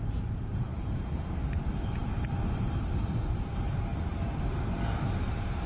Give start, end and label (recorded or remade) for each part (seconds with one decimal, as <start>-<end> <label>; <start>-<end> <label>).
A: 0.0-3.9 remade; 3.9-5.3 recorded; 5.3-5.7 remade

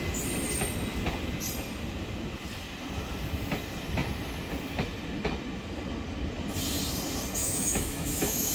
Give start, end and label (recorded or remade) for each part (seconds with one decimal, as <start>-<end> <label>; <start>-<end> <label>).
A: 0.0-7.4 recorded; 7.4-8.5 remade

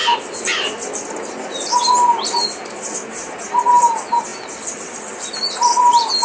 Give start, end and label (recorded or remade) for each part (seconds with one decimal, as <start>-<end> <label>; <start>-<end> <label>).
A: 0.0-6.2 recorded

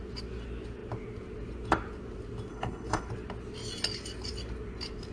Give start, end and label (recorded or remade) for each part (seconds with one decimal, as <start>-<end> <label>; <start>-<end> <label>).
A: 0.0-2.5 recorded; 2.5-3.1 remade; 3.1-5.1 recorded

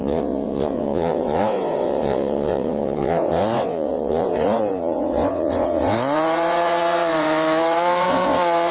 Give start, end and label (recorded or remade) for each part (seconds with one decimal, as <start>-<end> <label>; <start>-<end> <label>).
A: 0.0-8.7 remade

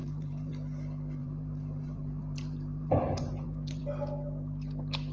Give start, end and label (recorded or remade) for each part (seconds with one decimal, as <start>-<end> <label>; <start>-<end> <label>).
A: 0.0-0.5 remade; 0.5-1.2 recorded; 1.2-3.8 remade; 3.8-5.1 recorded

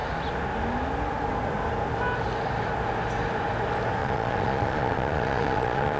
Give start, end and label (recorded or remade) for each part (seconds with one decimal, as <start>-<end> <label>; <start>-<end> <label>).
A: 0.0-4.0 recorded; 4.0-6.0 remade